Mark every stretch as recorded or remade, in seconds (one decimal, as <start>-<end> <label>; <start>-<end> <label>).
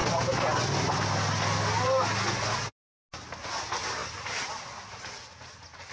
0.0-5.9 recorded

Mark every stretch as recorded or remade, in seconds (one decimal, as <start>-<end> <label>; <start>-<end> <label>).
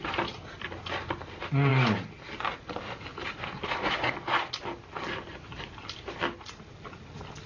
0.0-7.5 recorded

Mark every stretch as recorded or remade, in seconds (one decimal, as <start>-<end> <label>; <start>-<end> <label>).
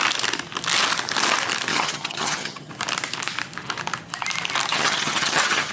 0.0-1.7 recorded; 1.7-2.7 remade; 2.7-4.7 recorded; 4.7-5.7 remade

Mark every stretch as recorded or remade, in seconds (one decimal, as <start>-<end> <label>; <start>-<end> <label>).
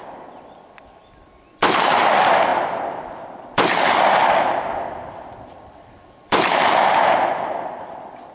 0.0-8.3 recorded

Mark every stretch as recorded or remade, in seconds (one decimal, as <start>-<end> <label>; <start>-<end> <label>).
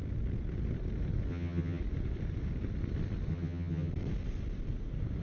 0.0-1.3 recorded; 1.3-1.8 remade; 1.8-3.3 recorded; 3.3-3.9 remade; 3.9-5.2 recorded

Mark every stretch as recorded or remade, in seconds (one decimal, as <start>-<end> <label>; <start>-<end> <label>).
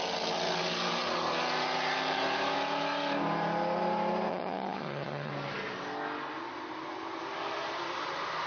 0.0-4.3 recorded; 4.3-5.3 remade; 5.3-8.5 recorded